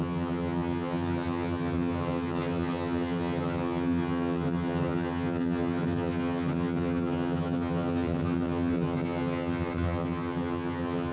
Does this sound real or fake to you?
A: fake